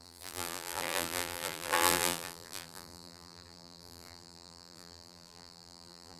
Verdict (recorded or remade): remade